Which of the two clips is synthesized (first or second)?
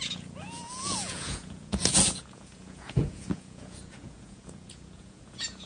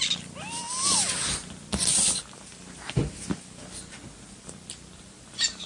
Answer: first